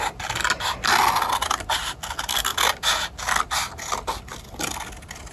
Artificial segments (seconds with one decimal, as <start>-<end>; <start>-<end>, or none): none